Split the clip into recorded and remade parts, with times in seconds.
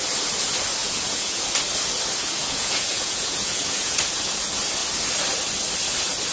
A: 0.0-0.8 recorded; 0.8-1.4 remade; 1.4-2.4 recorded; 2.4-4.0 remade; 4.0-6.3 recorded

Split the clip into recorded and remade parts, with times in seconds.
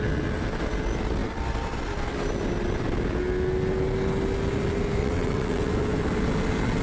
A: 0.0-5.0 recorded; 5.0-5.7 remade; 5.7-6.8 recorded